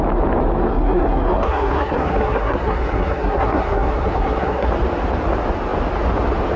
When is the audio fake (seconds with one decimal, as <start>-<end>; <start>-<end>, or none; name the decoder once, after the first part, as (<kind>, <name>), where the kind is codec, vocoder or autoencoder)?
0.7-4.7 (codec, SNAC)